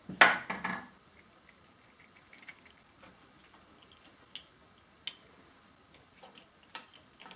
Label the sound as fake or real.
real